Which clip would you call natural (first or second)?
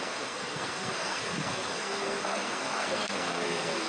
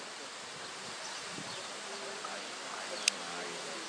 second